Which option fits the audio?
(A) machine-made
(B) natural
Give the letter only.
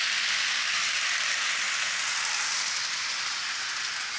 B